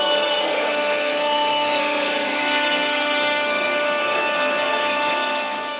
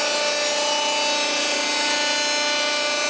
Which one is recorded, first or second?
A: second